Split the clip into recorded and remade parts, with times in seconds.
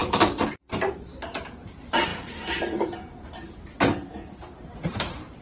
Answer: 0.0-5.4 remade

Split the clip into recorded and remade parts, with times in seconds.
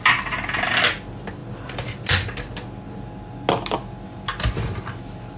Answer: 0.0-1.4 recorded; 1.4-2.5 remade; 2.5-5.4 recorded